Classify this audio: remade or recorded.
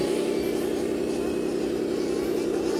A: recorded